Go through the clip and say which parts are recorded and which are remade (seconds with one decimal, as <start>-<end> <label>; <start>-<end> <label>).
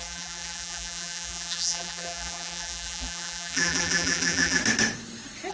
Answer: 0.0-4.6 remade; 4.6-5.5 recorded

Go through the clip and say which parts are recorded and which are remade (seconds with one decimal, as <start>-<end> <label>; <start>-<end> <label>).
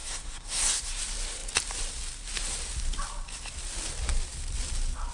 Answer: 0.0-1.0 remade; 1.0-5.1 recorded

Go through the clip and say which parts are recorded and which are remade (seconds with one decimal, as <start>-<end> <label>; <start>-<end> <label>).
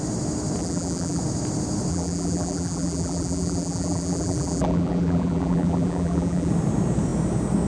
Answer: 0.0-0.6 recorded; 0.6-1.2 remade; 1.2-1.9 recorded; 1.9-6.5 remade; 6.5-7.7 recorded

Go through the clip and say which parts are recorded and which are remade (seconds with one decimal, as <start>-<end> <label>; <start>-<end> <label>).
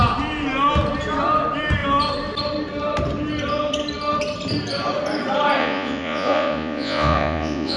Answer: 0.0-5.6 recorded; 5.6-7.8 remade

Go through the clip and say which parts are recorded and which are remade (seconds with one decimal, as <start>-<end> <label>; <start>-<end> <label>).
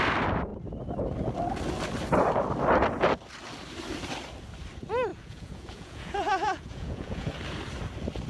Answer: 0.0-5.1 recorded; 5.1-7.3 remade; 7.3-8.3 recorded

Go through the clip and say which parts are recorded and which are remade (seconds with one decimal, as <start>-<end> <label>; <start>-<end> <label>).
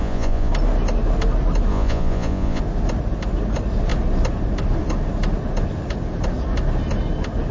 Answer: 0.0-0.5 remade; 0.5-1.7 recorded; 1.7-2.6 remade; 2.6-7.5 recorded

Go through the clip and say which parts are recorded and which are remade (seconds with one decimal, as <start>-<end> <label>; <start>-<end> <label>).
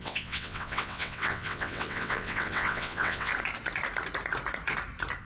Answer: 0.0-3.3 remade; 3.3-5.2 recorded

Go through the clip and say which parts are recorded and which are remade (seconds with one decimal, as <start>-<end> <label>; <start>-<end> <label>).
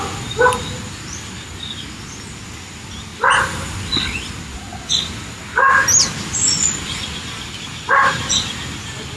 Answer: 0.0-9.2 recorded